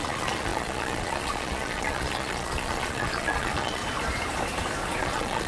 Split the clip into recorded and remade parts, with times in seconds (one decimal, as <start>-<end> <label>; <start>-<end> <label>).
0.0-3.8 remade; 3.8-5.0 recorded; 5.0-5.5 remade

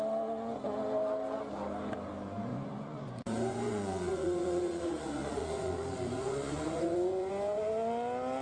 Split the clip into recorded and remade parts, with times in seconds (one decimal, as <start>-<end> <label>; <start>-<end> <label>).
0.0-2.5 recorded; 2.5-7.3 remade; 7.3-8.4 recorded

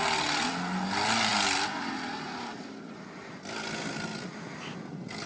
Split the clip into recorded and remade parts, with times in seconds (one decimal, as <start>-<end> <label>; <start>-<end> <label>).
0.0-5.3 recorded

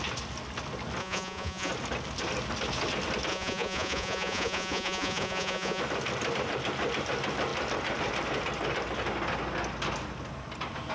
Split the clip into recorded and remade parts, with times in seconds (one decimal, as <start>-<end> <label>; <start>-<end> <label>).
0.0-1.0 recorded; 1.0-1.7 remade; 1.7-3.3 recorded; 3.3-5.8 remade; 5.8-10.9 recorded